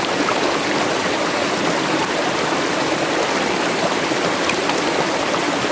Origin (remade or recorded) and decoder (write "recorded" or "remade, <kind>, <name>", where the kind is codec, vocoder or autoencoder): recorded